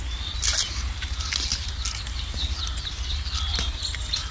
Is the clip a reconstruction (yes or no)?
no